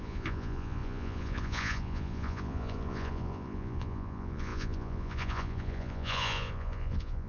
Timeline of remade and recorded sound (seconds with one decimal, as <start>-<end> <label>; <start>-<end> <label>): 0.0-7.3 remade